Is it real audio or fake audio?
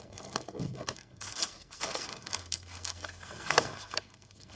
fake